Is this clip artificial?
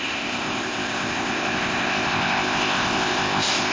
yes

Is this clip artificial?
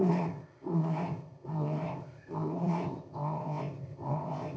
yes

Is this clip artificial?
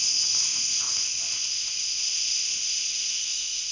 yes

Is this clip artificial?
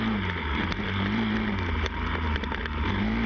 no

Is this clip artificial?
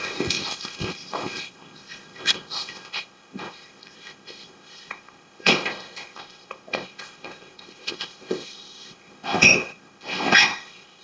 yes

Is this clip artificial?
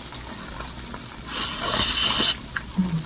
no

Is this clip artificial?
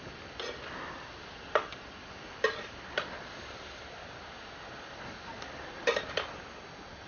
no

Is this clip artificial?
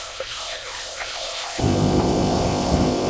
yes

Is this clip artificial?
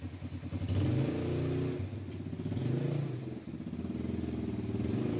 no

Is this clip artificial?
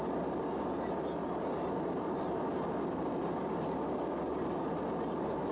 no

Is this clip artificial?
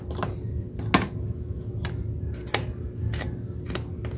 no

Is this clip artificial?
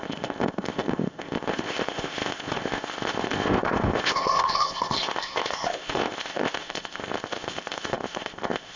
yes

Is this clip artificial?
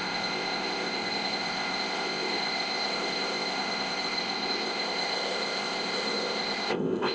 yes